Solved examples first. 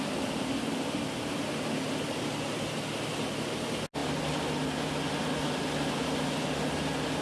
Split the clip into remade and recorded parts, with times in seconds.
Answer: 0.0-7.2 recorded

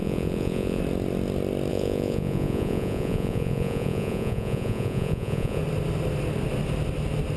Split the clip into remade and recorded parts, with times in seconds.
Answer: 0.0-0.8 remade; 0.8-1.7 recorded; 1.7-5.6 remade; 5.6-7.4 recorded

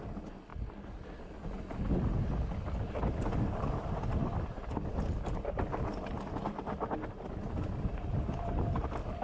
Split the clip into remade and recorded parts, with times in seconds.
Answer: 0.0-9.2 recorded

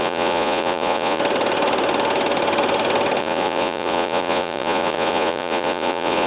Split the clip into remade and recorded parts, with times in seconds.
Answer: 0.0-1.2 remade; 1.2-3.2 recorded; 3.2-6.3 remade

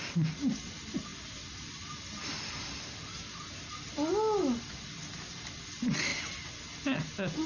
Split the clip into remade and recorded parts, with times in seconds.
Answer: 0.0-7.5 recorded